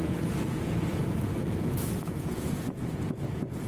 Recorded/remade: remade